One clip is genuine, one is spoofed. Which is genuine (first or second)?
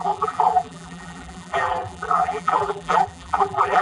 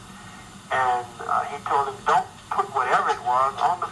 second